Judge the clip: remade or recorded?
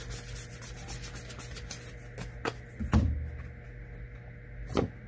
recorded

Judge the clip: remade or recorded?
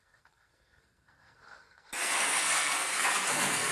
remade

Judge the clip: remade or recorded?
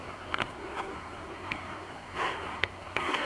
remade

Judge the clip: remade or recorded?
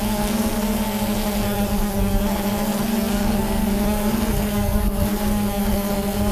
remade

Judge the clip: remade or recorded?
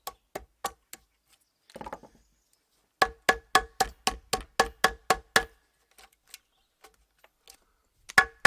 recorded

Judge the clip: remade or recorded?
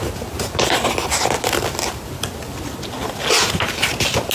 recorded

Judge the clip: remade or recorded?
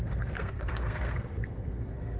remade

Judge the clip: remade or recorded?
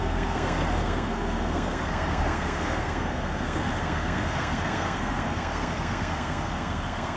remade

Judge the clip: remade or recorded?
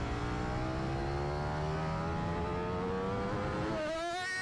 recorded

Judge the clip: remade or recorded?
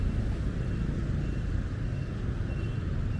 recorded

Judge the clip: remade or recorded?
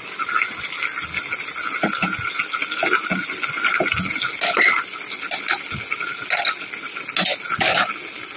recorded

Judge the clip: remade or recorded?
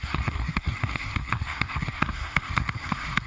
remade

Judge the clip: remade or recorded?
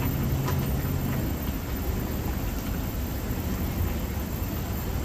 recorded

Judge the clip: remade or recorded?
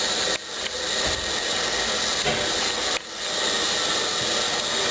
recorded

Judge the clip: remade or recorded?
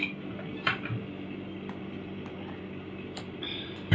recorded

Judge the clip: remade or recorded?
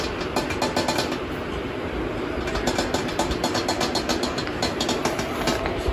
recorded